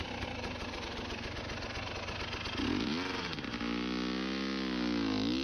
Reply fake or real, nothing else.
real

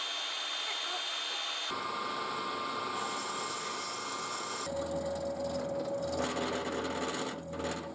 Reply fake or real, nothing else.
real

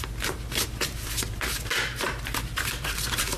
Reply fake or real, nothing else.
fake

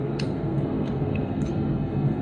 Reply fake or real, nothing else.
fake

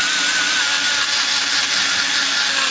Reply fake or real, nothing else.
real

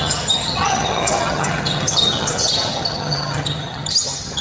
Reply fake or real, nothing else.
fake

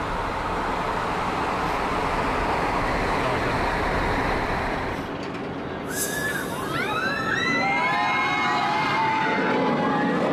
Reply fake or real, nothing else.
real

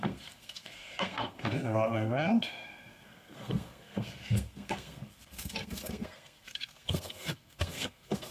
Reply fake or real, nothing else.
fake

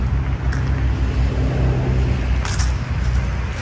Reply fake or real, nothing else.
real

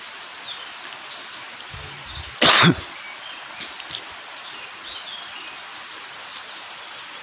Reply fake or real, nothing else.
real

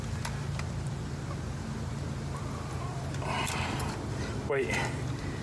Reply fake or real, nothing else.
real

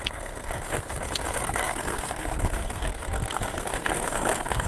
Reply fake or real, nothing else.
fake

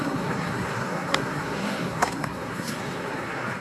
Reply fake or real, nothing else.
fake